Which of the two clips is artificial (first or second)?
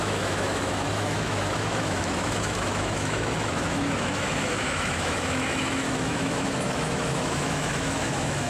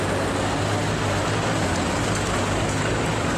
first